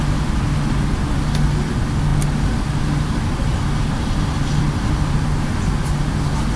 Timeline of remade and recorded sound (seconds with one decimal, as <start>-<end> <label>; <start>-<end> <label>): 0.0-3.5 recorded; 3.5-5.5 remade; 5.5-6.6 recorded